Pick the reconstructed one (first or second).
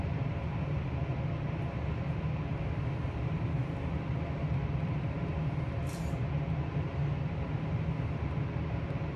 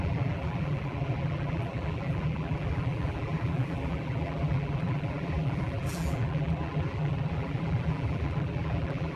second